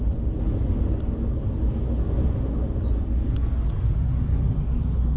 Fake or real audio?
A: real